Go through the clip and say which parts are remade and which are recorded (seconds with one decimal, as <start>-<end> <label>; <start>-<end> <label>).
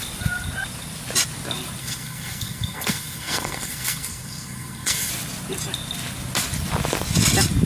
0.0-1.8 recorded; 1.8-5.1 remade; 5.1-7.7 recorded